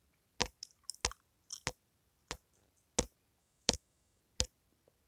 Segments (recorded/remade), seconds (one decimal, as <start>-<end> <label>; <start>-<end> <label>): 0.0-3.4 recorded; 3.4-4.2 remade; 4.2-5.1 recorded